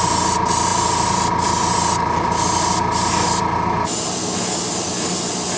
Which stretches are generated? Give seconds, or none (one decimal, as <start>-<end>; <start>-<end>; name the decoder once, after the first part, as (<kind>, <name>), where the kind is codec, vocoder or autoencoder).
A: 0.7-3.1 (vocoder, BigVGAN v2); 4.7-5.6